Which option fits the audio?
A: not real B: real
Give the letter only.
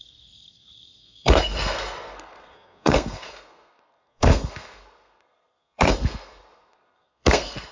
A